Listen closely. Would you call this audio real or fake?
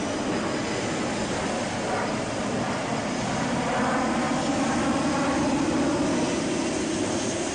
real